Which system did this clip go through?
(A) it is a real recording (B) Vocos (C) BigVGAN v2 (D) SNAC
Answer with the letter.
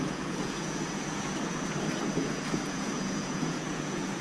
B